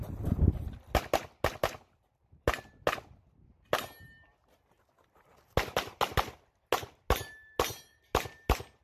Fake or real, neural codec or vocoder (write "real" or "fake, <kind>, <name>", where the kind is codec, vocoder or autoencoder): real